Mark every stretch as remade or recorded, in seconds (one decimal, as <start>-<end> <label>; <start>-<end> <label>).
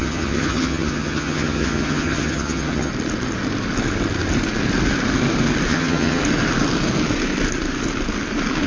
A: 0.0-2.9 remade; 2.9-5.7 recorded; 5.7-6.2 remade; 6.2-8.7 recorded